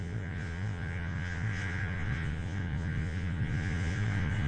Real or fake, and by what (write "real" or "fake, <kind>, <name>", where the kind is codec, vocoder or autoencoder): fake, vocoder, Vocos